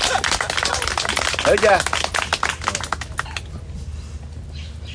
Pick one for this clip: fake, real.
real